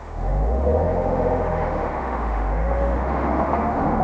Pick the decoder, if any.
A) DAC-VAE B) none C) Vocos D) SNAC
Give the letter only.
A